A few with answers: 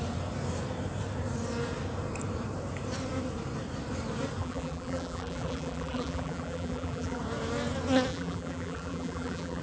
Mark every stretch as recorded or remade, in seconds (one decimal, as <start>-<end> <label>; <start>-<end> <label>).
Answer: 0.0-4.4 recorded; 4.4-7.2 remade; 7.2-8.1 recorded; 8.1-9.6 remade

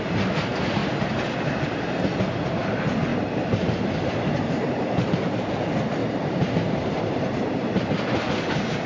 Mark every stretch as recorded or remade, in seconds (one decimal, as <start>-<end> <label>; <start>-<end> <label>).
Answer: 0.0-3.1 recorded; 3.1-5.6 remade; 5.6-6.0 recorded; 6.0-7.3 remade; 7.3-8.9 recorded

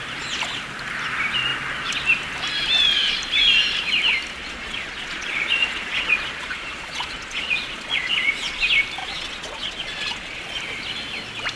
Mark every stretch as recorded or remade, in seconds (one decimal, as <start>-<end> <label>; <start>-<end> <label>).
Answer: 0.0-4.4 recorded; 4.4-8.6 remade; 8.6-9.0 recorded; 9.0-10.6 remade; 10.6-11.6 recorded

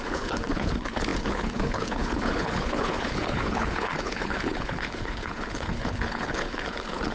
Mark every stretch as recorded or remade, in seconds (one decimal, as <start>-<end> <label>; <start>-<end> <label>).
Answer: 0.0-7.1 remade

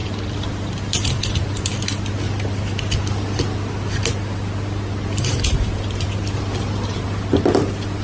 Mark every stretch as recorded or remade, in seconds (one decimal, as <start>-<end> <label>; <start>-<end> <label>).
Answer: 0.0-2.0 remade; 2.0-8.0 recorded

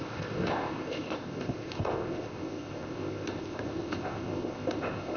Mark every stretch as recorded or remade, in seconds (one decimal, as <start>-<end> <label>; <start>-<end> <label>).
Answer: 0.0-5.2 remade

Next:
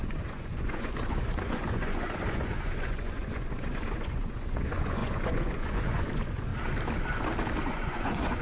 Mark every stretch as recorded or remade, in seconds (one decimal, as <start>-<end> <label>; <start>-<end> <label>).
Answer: 0.0-6.5 remade; 6.5-7.6 recorded; 7.6-8.4 remade